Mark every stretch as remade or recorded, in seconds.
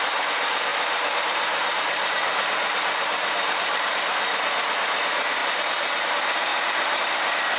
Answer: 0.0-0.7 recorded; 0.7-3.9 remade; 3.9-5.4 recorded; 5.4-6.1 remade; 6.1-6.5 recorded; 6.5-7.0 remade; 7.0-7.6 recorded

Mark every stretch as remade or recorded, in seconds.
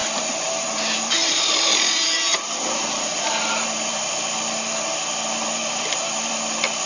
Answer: 0.0-4.1 remade; 4.1-5.6 recorded; 5.6-6.3 remade; 6.3-6.9 recorded